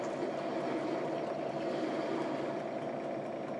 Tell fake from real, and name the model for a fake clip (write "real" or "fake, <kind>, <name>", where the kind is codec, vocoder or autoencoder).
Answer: real